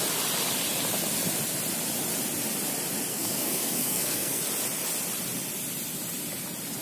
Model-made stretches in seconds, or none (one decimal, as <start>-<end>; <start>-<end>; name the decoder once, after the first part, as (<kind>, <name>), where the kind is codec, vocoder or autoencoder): 3.1-4.4 (codec, SNAC)